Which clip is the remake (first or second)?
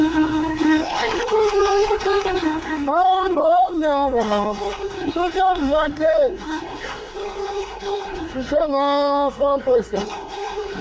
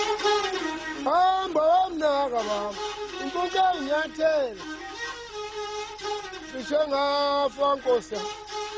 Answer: first